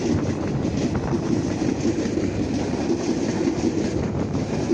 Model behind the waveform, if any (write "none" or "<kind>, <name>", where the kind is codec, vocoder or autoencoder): none